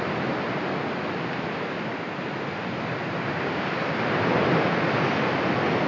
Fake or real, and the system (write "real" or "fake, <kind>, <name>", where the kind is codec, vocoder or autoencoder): real